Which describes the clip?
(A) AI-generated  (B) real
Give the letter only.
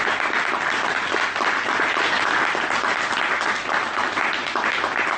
B